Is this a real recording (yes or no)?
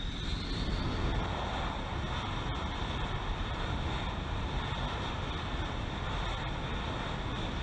yes